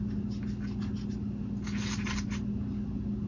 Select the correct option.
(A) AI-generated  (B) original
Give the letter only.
B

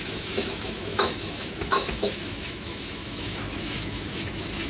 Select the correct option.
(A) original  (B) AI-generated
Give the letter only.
B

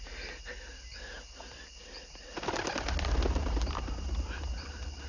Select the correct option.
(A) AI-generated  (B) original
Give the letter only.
B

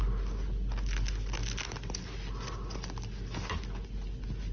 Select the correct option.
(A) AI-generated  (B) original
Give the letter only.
B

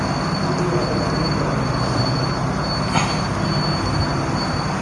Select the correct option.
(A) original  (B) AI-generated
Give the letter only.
A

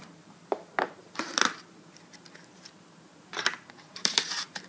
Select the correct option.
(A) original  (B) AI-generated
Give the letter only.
B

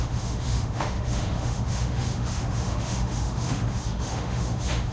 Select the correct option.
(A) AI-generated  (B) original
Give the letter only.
A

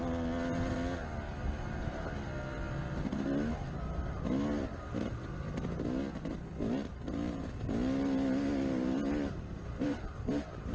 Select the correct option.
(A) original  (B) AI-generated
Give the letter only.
A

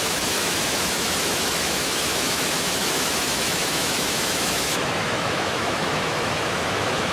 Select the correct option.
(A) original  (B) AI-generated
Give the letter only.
B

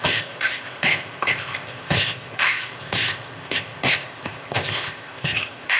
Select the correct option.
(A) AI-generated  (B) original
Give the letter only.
A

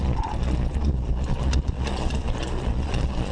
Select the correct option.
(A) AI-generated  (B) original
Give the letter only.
A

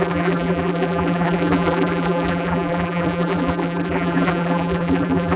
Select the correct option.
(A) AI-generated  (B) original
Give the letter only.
A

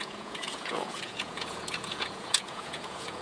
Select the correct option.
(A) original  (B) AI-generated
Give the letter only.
B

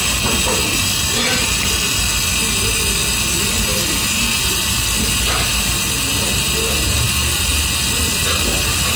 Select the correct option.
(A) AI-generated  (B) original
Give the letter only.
B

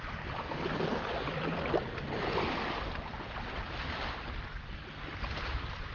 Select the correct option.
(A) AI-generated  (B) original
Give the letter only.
B